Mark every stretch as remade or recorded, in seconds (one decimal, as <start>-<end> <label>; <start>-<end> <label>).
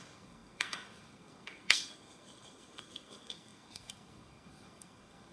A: 0.0-5.3 remade